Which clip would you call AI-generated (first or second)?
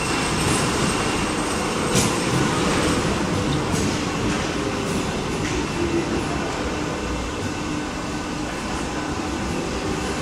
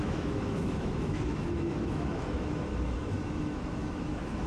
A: second